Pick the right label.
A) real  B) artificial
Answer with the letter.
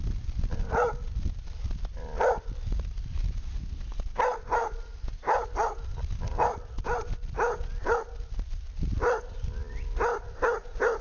A